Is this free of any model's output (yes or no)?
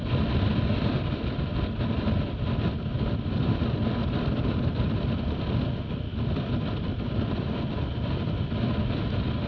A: yes